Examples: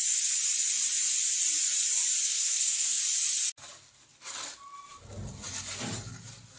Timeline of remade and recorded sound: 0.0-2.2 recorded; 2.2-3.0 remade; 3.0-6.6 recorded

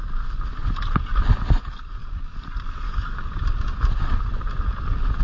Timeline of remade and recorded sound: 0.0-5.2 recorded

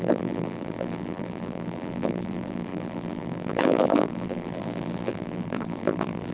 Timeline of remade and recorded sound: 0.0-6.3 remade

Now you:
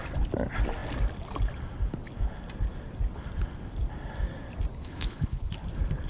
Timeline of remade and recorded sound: 0.0-4.7 recorded; 4.7-5.5 remade; 5.5-6.1 recorded

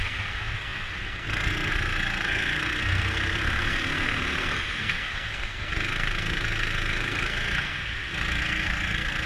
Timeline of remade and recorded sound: 0.0-9.3 remade

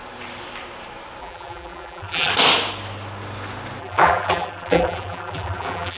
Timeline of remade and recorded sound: 0.0-1.2 recorded; 1.2-2.3 remade; 2.3-3.8 recorded; 3.8-6.0 remade

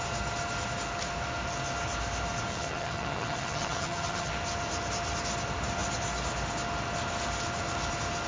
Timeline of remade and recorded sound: 0.0-2.5 recorded; 2.5-4.3 remade; 4.3-8.3 recorded